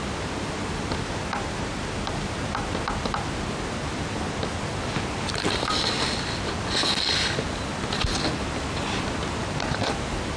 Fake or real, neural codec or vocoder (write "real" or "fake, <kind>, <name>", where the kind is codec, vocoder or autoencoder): real